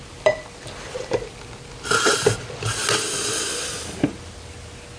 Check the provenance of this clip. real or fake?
real